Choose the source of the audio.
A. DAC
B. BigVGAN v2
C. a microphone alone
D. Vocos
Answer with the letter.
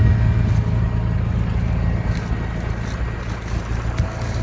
C